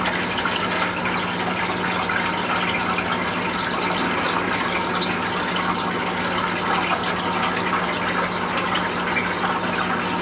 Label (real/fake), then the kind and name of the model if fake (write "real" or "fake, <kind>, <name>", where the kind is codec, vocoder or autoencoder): real